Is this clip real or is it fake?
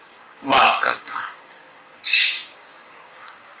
fake